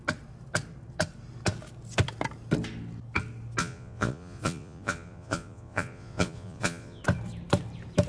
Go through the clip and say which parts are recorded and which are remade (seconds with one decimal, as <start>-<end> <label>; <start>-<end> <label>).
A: 0.0-3.6 recorded; 3.6-7.0 remade; 7.0-8.1 recorded